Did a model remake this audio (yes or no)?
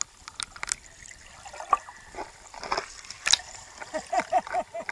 no